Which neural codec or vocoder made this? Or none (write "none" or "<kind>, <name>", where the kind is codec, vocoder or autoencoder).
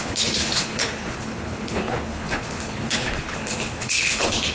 codec, HILCodec